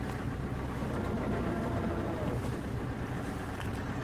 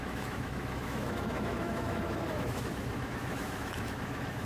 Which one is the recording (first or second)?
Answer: first